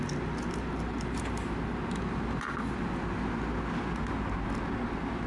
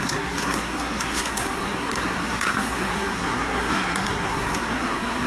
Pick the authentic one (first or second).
first